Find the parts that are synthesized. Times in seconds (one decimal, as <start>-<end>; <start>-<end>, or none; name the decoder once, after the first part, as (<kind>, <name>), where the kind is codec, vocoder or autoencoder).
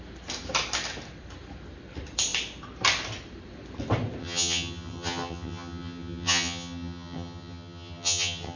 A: 4.2-8.6 (vocoder, HiFi-GAN)